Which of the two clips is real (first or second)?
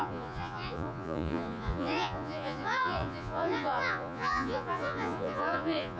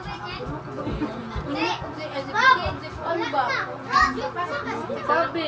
second